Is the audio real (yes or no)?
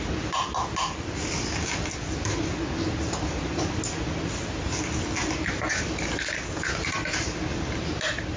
yes